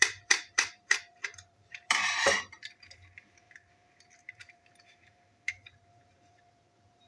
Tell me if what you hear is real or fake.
fake